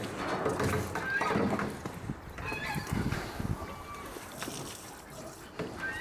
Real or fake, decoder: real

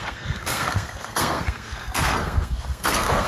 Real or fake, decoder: fake, codec, SNAC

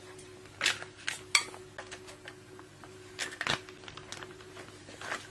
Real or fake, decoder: real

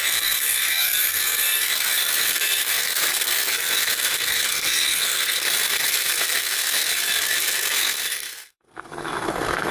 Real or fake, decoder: fake, codec, SNAC